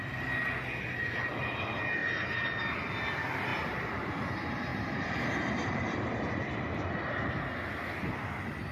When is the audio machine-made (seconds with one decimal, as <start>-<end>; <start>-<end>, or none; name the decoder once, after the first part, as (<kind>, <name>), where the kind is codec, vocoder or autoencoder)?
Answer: 4.7-6.2 (vocoder, BigVGAN v2)